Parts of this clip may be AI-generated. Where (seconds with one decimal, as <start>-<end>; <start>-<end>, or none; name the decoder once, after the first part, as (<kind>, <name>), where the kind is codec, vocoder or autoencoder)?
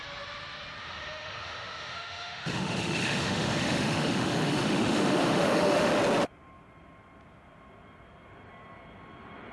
0.8-5.9 (autoencoder, DAC-VAE)